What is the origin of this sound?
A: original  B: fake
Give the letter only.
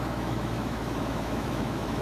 B